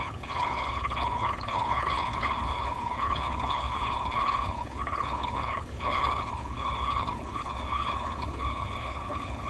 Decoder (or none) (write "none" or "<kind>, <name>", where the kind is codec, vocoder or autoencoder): codec, HILCodec